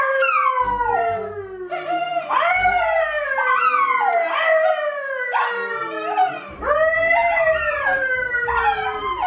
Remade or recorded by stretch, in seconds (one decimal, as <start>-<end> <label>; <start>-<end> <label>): 0.0-2.1 recorded; 2.1-3.6 remade; 3.6-5.8 recorded; 5.8-6.7 remade; 6.7-7.2 recorded; 7.2-9.3 remade